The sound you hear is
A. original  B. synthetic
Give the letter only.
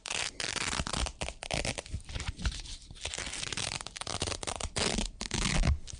A